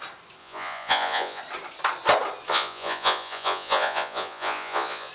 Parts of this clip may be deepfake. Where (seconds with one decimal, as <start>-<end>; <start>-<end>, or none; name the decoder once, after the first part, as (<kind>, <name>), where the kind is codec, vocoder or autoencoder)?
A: 0.4-1.4 (vocoder, Vocos); 2.5-5.1